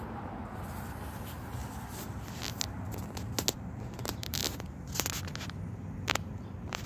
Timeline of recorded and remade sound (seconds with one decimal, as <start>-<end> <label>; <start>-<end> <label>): 0.0-0.4 remade; 0.4-1.0 recorded; 1.0-1.6 remade; 1.6-3.5 recorded; 3.5-4.4 remade; 4.4-5.5 recorded; 5.5-6.9 remade